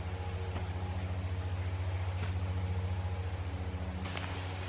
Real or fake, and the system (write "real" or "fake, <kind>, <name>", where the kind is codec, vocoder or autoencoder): real